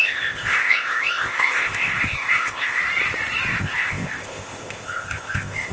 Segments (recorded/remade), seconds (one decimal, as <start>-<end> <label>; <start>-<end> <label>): 0.0-2.8 remade; 2.8-3.6 recorded; 3.6-5.7 remade